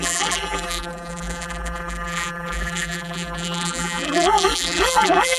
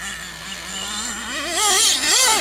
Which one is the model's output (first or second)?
first